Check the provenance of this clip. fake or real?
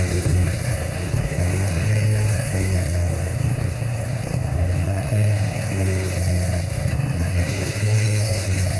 fake